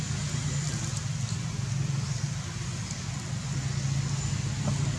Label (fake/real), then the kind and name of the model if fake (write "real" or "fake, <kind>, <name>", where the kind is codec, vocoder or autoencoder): real